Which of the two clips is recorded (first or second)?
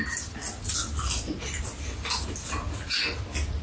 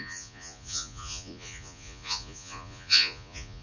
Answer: first